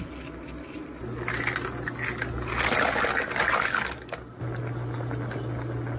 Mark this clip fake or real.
real